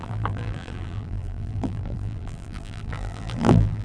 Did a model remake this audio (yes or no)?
yes